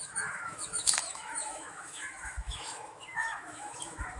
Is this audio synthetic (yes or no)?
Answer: yes